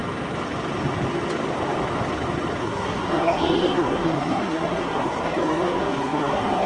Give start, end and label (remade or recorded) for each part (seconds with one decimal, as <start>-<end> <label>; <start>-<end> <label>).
0.0-2.6 recorded; 2.6-6.7 remade